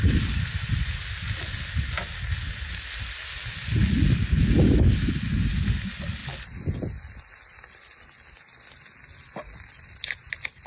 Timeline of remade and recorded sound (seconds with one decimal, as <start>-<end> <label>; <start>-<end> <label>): 0.0-10.7 recorded